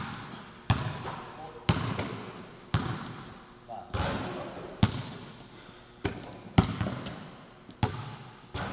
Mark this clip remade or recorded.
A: recorded